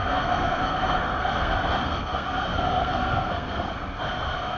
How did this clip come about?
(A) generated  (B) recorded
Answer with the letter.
A